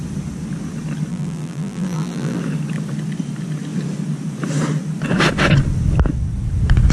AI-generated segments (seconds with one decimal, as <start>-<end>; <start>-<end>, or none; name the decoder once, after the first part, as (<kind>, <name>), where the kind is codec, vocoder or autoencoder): 1.1-2.4 (vocoder, BigVGAN v2)